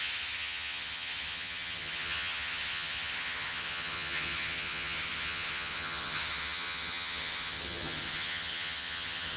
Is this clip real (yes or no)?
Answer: no